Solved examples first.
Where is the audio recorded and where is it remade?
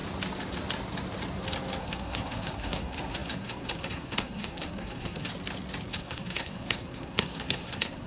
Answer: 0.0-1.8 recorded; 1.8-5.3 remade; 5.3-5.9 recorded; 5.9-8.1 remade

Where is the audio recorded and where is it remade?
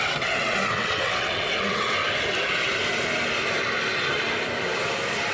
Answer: 0.0-2.0 remade; 2.0-5.3 recorded